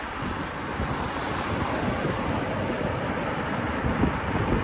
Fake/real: fake